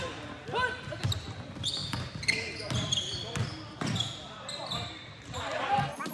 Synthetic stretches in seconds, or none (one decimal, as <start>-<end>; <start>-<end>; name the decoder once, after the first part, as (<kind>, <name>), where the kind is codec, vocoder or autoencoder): none